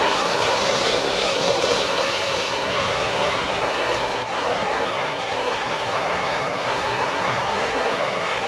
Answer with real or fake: fake